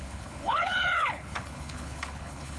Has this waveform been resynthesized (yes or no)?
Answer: yes